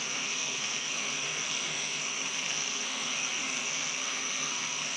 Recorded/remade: remade